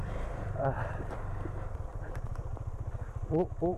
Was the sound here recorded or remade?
remade